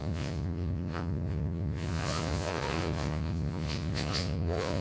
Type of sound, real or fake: fake